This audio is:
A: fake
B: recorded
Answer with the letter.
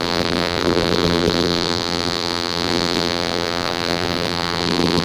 A